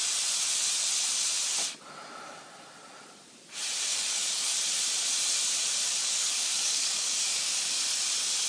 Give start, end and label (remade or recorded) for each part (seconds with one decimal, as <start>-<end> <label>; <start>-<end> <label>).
0.0-3.9 recorded; 3.9-4.6 remade; 4.6-6.0 recorded; 6.0-7.8 remade; 7.8-8.5 recorded